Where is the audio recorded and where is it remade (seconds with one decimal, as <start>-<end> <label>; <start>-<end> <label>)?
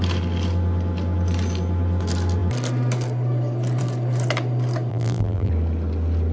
0.0-4.9 recorded; 4.9-5.5 remade; 5.5-6.3 recorded